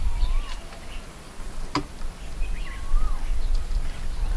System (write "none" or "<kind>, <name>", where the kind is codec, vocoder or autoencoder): none